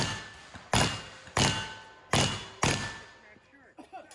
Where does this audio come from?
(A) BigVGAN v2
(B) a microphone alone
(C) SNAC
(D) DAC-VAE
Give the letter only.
B